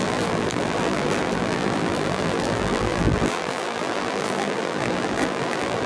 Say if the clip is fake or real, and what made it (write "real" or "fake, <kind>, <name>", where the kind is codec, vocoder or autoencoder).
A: fake, vocoder, BigVGAN v2